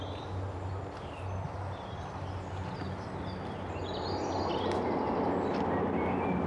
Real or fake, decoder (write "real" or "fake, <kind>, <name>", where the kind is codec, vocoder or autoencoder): real